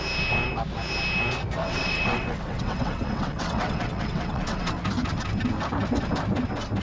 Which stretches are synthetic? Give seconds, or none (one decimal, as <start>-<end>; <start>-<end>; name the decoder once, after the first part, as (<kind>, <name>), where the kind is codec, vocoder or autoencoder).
1.6-4.7 (vocoder, WaveNeXt)